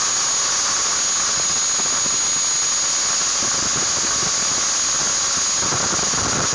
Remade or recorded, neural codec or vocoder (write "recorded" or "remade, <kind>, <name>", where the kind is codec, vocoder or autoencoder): recorded